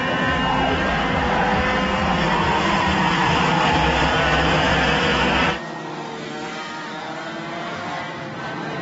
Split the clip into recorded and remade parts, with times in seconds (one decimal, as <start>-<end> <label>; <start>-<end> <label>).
0.0-8.8 recorded